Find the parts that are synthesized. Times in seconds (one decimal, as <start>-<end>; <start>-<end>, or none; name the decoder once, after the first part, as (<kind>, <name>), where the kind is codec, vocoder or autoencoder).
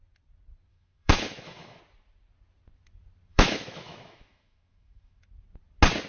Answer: 0.7-1.8 (autoencoder, DAC-VAE); 3.3-5.2